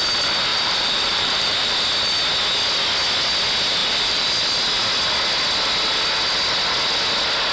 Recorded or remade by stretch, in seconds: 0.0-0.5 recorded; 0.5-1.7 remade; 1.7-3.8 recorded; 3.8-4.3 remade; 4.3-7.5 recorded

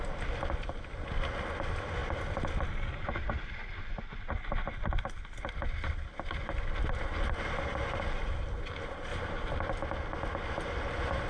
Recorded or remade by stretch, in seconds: 0.0-7.7 recorded; 7.7-8.4 remade; 8.4-9.1 recorded; 9.1-9.7 remade; 9.7-11.3 recorded

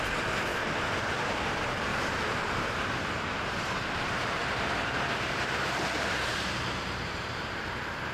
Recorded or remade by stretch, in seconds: 0.0-0.5 remade; 0.5-1.1 recorded; 1.1-8.1 remade

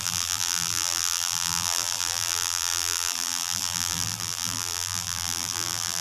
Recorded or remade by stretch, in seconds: 0.0-6.0 remade

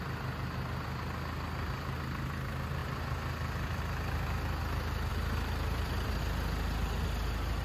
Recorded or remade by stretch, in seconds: 0.0-5.1 recorded; 5.1-6.2 remade; 6.2-7.6 recorded

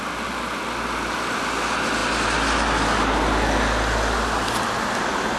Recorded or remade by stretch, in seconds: 0.0-5.4 recorded